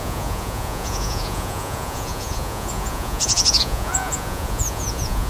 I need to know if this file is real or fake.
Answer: fake